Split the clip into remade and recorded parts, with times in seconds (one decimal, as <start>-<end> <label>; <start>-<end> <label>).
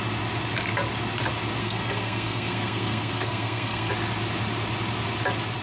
0.0-1.6 recorded; 1.6-3.9 remade; 3.9-5.6 recorded